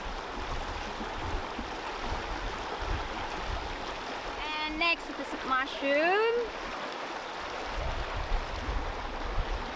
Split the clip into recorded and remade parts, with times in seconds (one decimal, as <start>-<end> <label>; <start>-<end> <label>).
0.0-9.8 recorded